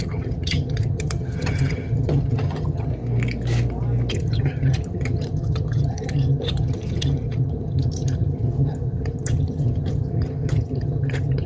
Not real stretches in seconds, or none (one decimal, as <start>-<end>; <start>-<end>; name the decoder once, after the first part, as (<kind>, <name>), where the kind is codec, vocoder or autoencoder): 0.0-2.9 (vocoder, HiFi-GAN); 4.1-11.5